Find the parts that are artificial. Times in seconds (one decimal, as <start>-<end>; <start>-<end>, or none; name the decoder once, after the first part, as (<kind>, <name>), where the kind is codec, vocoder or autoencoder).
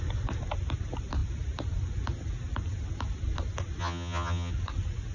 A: 3.8-4.5 (vocoder, HiFi-GAN)